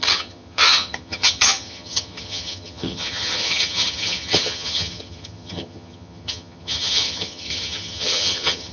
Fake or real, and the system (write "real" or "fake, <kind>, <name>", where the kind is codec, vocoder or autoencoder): fake, vocoder, HiFi-GAN